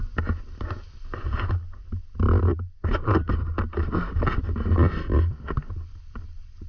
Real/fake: real